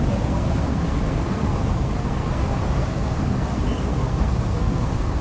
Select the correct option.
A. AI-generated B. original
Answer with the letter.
A